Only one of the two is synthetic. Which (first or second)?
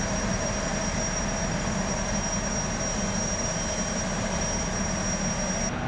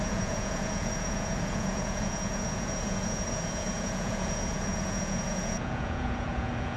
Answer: second